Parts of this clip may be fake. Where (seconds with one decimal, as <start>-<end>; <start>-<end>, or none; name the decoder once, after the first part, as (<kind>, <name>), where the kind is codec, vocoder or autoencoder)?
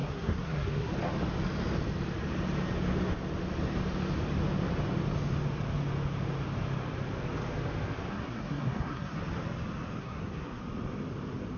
0.0-0.9 (codec, SNAC); 8.1-9.2; 10.0-10.6